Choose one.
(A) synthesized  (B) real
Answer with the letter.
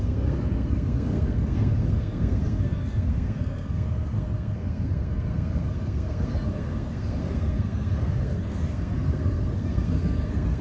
A